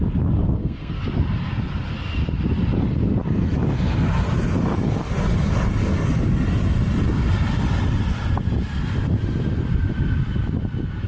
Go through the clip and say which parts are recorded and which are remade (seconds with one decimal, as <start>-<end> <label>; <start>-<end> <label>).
0.0-0.4 recorded; 0.4-1.0 remade; 1.0-11.1 recorded